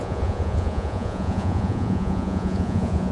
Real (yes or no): no